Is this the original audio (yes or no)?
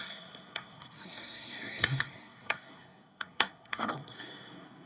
no